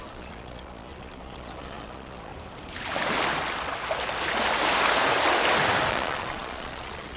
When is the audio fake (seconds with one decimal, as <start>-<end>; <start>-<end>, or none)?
0.0-2.3; 5.9-7.2